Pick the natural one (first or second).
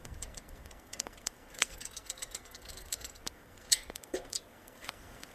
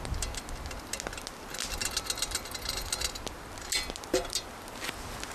second